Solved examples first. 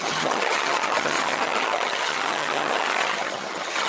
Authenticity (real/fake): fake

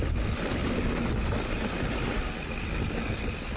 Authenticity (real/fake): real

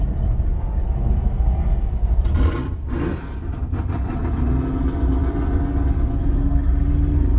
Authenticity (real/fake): real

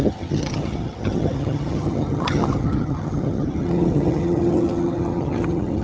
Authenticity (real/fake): fake